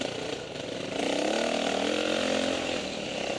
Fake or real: real